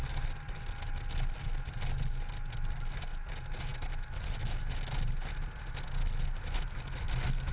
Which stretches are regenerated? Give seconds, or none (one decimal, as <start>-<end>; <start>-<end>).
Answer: none